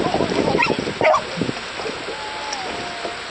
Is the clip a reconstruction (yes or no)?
no